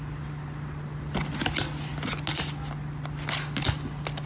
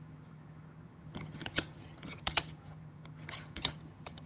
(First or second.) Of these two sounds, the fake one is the second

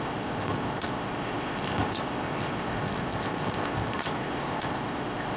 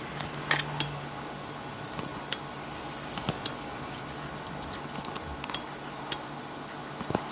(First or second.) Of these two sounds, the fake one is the first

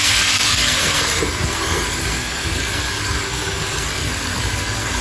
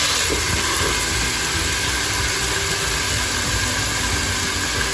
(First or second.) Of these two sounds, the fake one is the first